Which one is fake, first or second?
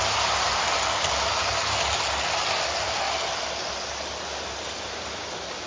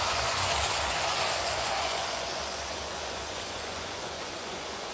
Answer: second